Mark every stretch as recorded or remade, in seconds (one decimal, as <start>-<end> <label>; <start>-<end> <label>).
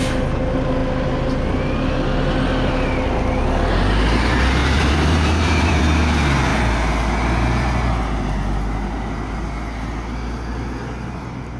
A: 0.0-4.6 recorded; 4.6-5.8 remade; 5.8-11.6 recorded